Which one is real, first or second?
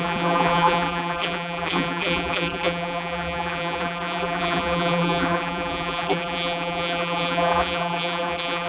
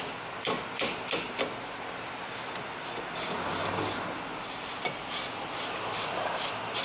second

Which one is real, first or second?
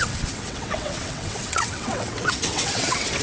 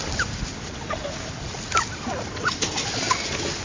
second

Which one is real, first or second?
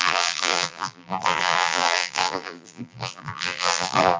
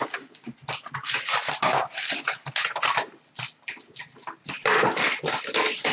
second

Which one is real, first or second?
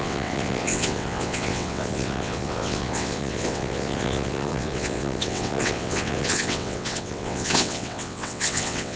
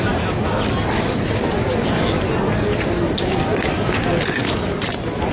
second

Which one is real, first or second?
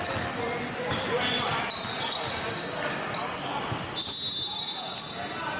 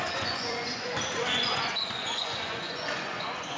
first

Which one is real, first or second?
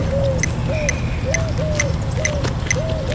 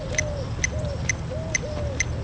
first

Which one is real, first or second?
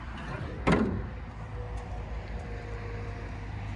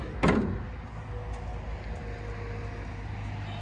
second